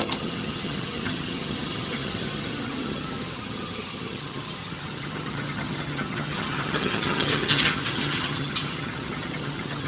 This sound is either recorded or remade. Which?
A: remade